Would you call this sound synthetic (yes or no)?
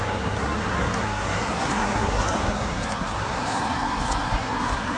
yes